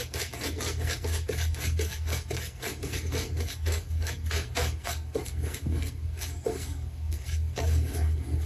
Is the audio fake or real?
fake